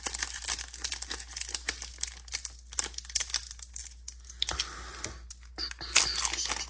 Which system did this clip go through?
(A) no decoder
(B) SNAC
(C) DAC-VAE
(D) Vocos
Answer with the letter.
A